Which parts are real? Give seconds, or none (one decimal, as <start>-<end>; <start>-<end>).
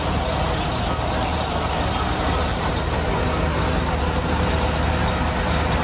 0.0-5.8